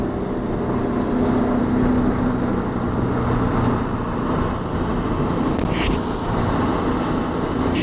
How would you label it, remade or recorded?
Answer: recorded